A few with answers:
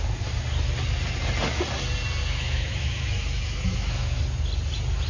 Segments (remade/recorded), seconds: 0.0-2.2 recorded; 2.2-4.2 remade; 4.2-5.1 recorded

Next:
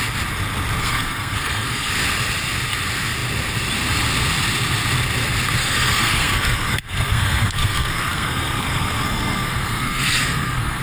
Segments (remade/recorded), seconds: 0.0-0.8 recorded; 0.8-1.9 remade; 1.9-5.6 recorded; 5.6-10.8 remade

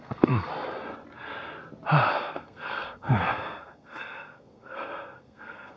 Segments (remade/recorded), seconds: 0.0-0.5 remade; 0.5-2.1 recorded; 2.1-5.8 remade

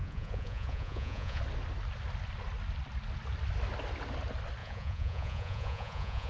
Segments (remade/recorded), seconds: 0.0-1.4 remade; 1.4-4.6 recorded; 4.6-6.3 remade

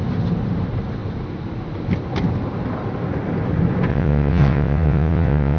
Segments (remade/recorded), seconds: 0.0-3.9 recorded; 3.9-5.6 remade

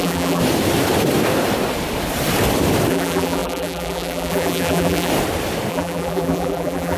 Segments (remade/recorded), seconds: 0.0-0.4 remade; 0.4-2.9 recorded; 2.9-5.1 remade; 5.1-5.7 recorded; 5.7-7.0 remade